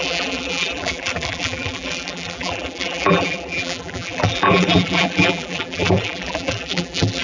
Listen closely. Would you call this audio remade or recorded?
remade